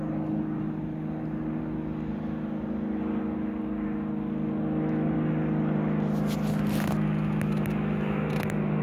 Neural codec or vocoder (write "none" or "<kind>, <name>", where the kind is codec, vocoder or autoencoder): none